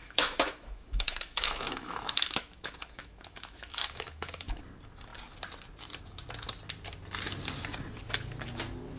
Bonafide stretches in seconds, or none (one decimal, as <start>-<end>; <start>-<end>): 4.6-9.0